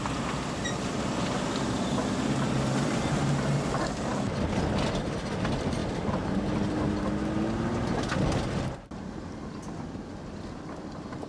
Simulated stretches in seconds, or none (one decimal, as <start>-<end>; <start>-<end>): 0.0-5.8; 8.6-11.3